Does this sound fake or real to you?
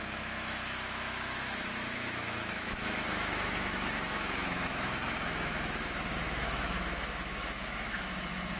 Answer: fake